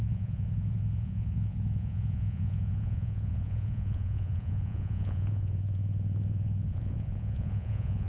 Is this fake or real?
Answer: fake